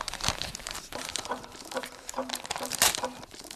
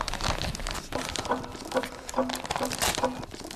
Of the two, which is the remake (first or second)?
first